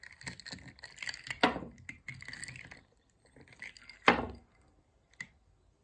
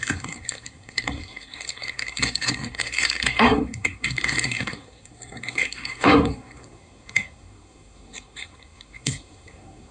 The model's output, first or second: second